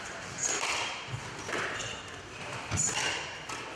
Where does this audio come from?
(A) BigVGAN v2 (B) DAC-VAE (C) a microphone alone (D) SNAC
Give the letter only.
C